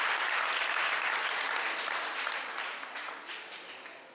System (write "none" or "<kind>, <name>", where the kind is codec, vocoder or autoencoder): none